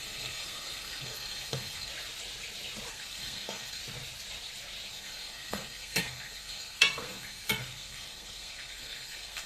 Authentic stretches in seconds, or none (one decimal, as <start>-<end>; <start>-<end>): 1.9-2.9; 3.8-4.9